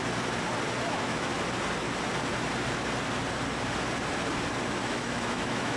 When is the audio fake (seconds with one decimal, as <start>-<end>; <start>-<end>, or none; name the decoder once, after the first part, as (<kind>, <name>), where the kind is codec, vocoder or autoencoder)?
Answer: 0.9-1.3 (autoencoder, DAC-VAE); 4.8-5.8